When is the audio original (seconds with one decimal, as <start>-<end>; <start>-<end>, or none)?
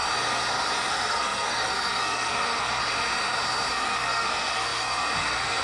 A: 0.0-0.9; 2.8-3.7